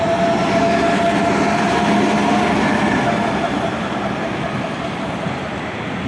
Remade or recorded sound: recorded